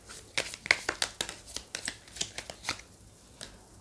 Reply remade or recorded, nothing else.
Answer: recorded